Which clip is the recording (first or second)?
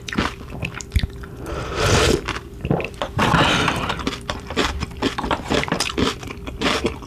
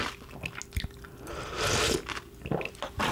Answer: second